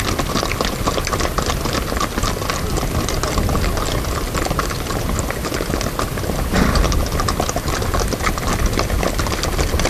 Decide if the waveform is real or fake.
real